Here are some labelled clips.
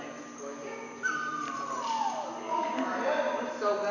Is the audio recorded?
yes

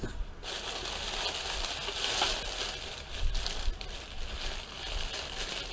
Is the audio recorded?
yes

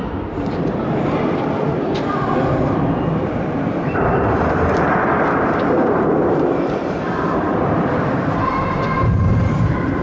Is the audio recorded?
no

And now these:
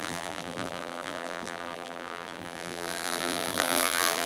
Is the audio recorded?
no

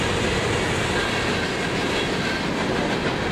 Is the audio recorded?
yes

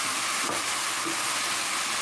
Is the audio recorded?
yes